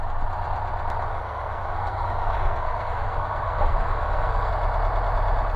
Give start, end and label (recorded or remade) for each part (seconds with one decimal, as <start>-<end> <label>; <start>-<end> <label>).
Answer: 0.0-1.1 recorded; 1.1-4.5 remade; 4.5-5.6 recorded